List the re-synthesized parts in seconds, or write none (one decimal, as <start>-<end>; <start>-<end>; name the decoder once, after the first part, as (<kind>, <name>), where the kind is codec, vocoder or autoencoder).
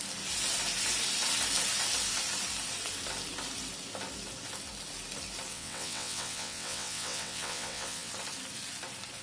5.5-8.1 (vocoder, WaveNeXt)